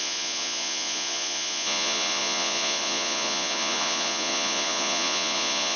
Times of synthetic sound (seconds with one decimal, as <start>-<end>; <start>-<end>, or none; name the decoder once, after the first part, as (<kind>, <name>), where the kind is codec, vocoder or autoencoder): 0.0-5.8 (vocoder, Vocos)